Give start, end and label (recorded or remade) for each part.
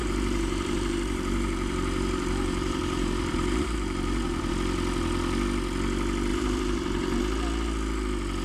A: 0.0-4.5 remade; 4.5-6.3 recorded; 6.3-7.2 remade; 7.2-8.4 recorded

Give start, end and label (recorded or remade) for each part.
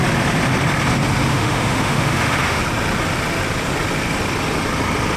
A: 0.0-1.3 recorded; 1.3-2.6 remade; 2.6-5.2 recorded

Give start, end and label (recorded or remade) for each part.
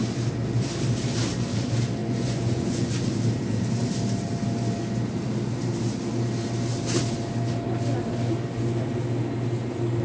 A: 0.0-2.0 recorded; 2.0-2.9 remade; 2.9-10.0 recorded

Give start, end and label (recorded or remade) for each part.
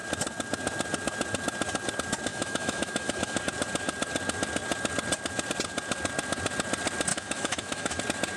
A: 0.0-2.3 recorded; 2.3-3.4 remade; 3.4-7.1 recorded; 7.1-8.0 remade; 8.0-8.4 recorded